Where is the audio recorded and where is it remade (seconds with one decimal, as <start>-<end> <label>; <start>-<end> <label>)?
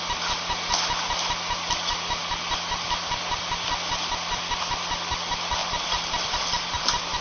0.0-5.6 recorded; 5.6-7.2 remade